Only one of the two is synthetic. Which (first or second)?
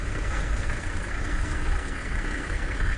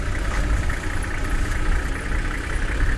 first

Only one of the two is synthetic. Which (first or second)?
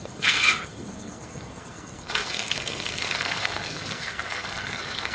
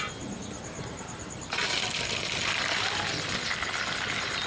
first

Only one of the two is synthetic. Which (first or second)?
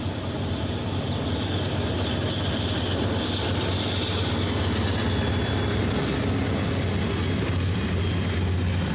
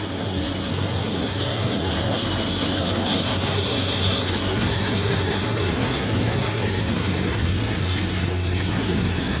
second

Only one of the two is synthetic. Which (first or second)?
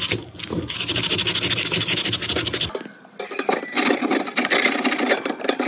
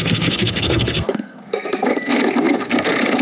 second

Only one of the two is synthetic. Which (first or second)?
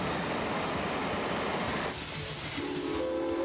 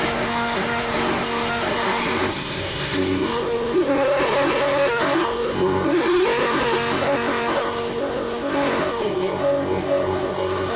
second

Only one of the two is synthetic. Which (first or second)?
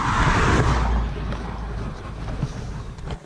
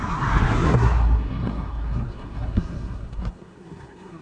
second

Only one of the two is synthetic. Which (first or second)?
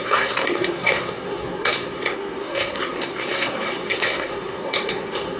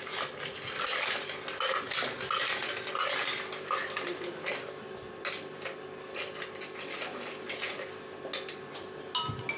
first